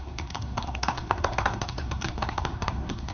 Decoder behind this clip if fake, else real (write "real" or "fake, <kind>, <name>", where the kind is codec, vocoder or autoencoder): fake, codec, SNAC